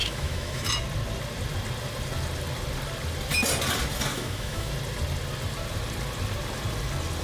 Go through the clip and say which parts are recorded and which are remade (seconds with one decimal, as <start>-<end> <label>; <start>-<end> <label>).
0.0-0.7 remade; 0.7-4.1 recorded; 4.1-4.7 remade; 4.7-7.2 recorded